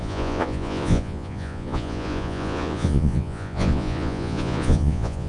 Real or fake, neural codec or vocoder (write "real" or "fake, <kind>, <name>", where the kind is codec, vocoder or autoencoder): fake, vocoder, Vocos